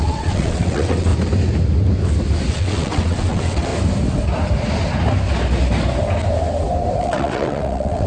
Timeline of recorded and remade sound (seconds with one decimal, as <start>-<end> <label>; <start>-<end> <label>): 0.0-1.1 remade; 1.1-2.5 recorded; 2.5-3.7 remade; 3.7-7.0 recorded; 7.0-8.1 remade